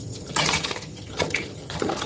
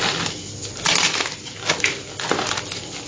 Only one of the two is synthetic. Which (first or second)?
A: first